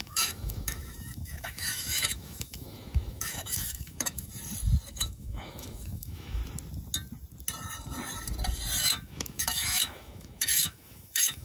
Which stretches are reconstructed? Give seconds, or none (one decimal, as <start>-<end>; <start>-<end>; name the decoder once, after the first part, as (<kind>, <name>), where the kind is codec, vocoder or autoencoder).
0.0-4.3 (autoencoder, DAC-VAE); 4.9-6.4; 8.8-11.4